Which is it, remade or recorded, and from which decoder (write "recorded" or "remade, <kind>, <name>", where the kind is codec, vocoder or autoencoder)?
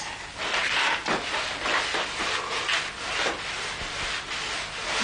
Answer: recorded